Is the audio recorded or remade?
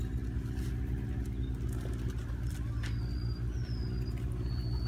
recorded